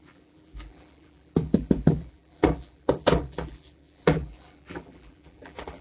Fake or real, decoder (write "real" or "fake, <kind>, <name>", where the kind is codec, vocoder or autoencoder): fake, vocoder, BigVGAN v2